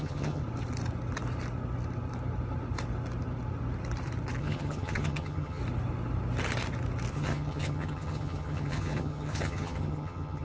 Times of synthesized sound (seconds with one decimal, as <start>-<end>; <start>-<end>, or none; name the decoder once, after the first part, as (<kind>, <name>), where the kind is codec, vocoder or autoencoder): 0.0-0.4 (vocoder, HiFi-GAN); 4.4-5.6; 7.1-10.4